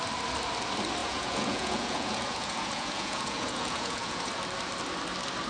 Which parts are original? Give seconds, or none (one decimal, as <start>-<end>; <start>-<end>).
0.0-1.0; 4.3-5.5